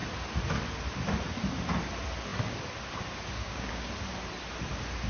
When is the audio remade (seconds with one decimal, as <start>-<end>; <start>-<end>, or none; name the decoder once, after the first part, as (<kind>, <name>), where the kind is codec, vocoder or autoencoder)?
3.4-3.9 (codec, DAC)

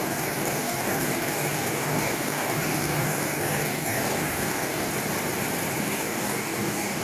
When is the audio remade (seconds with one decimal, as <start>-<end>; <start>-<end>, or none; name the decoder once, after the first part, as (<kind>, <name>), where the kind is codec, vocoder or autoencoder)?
0.0-4.9 (codec, DAC); 5.8-7.0

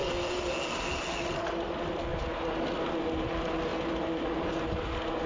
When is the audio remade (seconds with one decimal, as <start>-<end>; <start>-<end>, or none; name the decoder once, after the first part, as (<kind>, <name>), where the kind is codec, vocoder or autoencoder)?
none